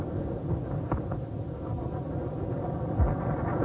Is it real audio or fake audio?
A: real